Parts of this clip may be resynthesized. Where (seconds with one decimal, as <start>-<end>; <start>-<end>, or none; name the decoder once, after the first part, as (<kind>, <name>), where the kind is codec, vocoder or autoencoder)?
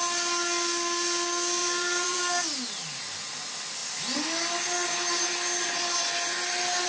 1.6-2.2 (vocoder, BigVGAN v2)